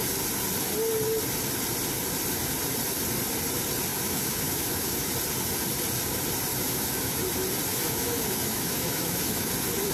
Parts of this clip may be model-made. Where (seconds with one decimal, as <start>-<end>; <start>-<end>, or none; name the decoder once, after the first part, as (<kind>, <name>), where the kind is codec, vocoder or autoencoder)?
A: 3.9-5.1 (autoencoder, DAC-VAE); 6.5-7.2; 7.7-9.5